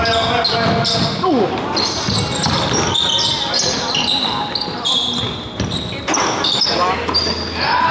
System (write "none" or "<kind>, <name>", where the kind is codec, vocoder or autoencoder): none